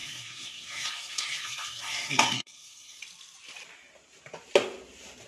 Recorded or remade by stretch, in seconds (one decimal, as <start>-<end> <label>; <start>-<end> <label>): 0.0-3.0 remade; 3.0-5.3 recorded